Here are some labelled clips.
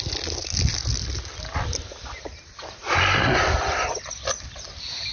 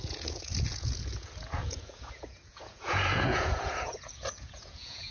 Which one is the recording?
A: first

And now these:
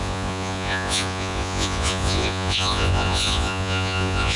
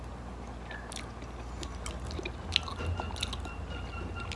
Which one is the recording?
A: second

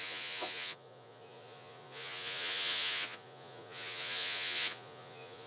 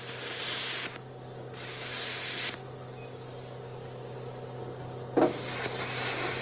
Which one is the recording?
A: second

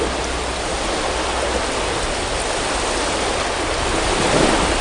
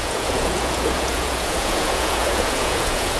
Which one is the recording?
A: first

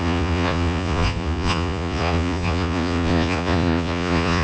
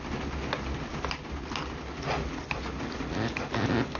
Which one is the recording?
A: second